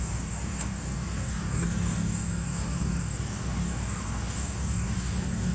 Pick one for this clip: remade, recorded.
remade